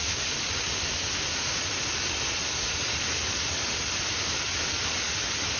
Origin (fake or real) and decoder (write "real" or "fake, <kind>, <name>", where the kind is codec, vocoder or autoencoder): real